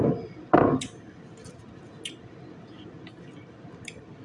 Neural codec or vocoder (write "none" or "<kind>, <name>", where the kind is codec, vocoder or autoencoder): none